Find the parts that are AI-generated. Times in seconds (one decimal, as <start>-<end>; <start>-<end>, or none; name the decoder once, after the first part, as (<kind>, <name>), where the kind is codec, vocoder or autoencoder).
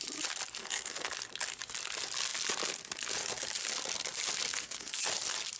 0.6-1.1 (codec, SNAC); 4.5-5.0